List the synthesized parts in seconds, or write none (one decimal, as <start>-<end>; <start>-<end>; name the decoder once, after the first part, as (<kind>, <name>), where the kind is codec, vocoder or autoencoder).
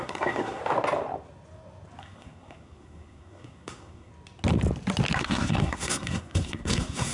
0.0-0.6 (codec, SNAC); 2.0-4.1; 5.2-7.1